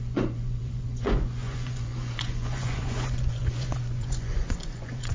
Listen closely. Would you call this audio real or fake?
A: fake